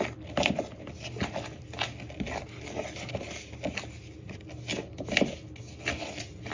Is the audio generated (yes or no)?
no